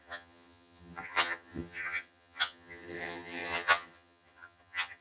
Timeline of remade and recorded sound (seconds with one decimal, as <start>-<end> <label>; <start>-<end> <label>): 0.0-5.0 remade